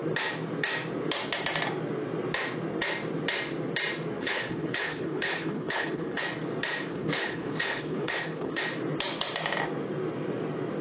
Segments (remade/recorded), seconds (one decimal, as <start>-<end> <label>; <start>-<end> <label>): 0.0-4.2 recorded; 4.2-6.2 remade; 6.2-6.9 recorded; 6.9-8.6 remade; 8.6-10.8 recorded